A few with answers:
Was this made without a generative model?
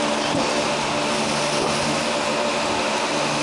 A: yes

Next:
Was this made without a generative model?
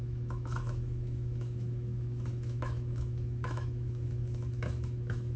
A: no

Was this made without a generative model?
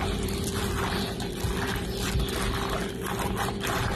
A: yes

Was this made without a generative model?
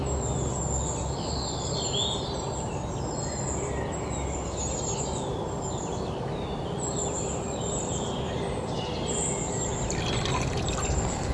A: yes